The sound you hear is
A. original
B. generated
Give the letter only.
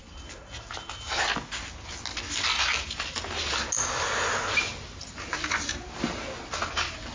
A